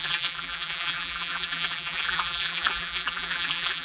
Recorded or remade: remade